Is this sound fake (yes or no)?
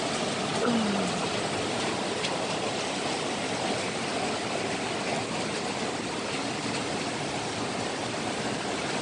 no